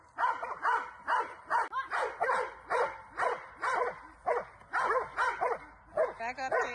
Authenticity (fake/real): real